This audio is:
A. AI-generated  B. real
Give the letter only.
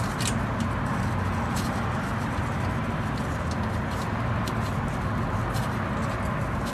B